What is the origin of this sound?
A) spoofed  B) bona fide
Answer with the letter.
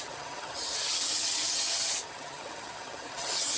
A